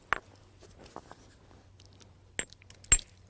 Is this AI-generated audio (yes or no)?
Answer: no